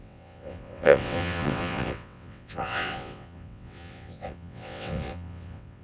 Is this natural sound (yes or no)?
no